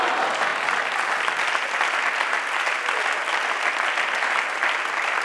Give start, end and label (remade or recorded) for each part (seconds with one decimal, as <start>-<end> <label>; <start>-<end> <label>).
0.0-5.2 recorded